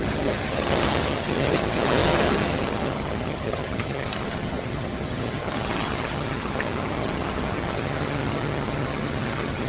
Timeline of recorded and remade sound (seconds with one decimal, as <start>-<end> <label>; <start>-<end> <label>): 0.0-9.7 remade